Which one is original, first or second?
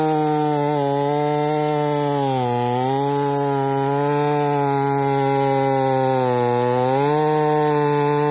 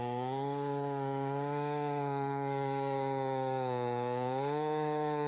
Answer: first